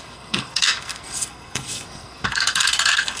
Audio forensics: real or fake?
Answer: fake